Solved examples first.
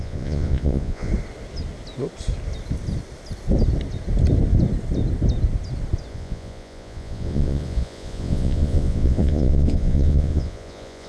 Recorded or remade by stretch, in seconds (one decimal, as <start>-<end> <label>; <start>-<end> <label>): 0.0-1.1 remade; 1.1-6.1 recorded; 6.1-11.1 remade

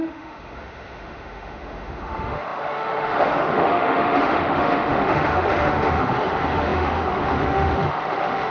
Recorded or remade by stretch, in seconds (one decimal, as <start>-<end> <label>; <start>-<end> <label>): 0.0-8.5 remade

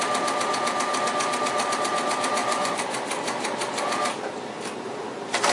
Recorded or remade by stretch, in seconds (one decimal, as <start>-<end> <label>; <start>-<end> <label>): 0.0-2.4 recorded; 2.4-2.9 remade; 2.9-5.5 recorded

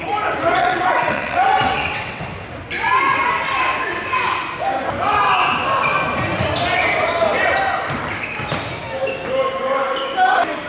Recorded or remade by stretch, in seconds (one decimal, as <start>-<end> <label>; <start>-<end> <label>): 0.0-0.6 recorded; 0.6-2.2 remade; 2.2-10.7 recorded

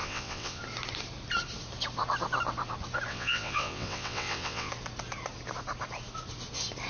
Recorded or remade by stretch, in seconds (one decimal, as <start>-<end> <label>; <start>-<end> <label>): 0.0-0.6 remade; 0.6-3.1 recorded; 3.1-4.7 remade; 4.7-6.9 recorded

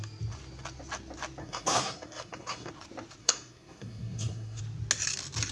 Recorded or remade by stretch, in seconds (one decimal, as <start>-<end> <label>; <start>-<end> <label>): 0.0-1.4 recorded; 1.4-2.7 remade; 2.7-3.2 recorded; 3.2-4.6 remade; 4.6-5.5 recorded

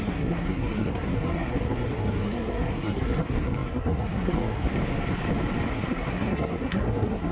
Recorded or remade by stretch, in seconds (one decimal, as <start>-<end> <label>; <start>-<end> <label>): 0.0-4.7 remade; 4.7-5.7 recorded; 5.7-7.3 remade

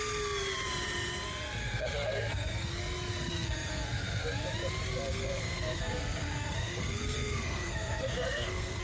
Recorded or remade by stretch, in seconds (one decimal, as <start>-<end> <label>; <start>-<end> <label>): 0.0-1.6 recorded; 1.6-2.8 remade; 2.8-3.3 recorded; 3.3-4.2 remade; 4.2-4.9 recorded; 4.9-8.8 remade